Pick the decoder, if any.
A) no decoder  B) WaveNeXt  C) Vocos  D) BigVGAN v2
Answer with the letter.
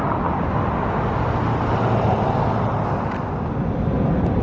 A